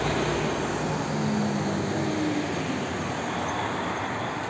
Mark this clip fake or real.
real